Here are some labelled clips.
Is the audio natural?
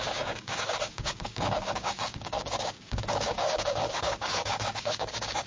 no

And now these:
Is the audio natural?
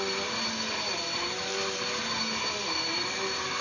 yes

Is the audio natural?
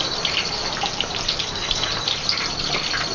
yes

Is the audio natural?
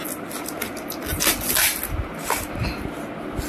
yes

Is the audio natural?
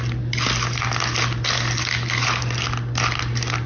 yes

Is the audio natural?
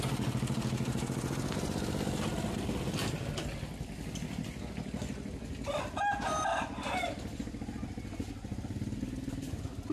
yes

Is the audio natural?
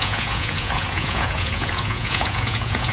no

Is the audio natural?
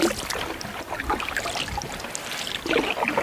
yes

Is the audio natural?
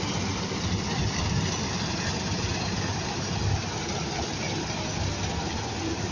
yes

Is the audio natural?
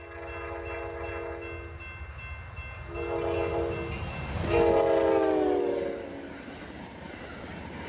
yes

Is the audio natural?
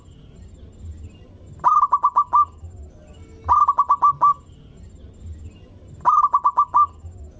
yes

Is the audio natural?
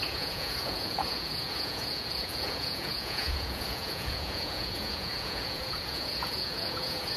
no